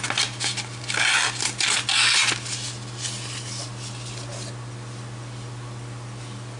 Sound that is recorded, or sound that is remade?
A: recorded